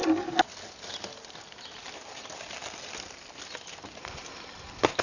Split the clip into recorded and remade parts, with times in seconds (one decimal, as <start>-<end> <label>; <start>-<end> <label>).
0.0-5.0 recorded